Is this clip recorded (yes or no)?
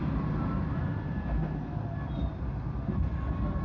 yes